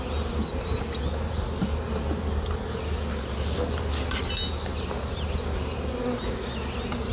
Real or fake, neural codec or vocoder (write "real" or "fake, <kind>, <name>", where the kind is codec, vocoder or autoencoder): real